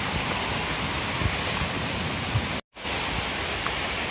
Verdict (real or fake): real